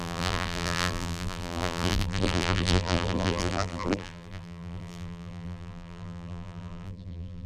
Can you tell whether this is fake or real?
fake